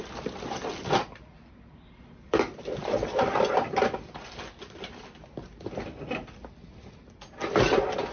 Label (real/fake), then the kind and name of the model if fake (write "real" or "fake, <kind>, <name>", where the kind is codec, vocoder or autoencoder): real